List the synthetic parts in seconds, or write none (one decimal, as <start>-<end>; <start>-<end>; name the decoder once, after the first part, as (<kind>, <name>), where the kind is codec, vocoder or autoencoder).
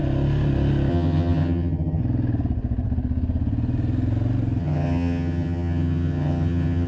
0.9-2.0 (vocoder, HiFi-GAN); 4.6-6.9